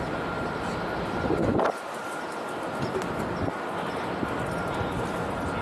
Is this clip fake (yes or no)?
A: no